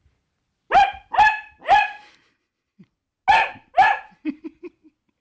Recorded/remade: recorded